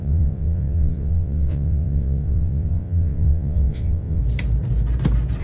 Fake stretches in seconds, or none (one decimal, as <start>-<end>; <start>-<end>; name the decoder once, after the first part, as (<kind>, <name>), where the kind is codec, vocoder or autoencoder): 0.0-4.2 (vocoder, WaveNeXt)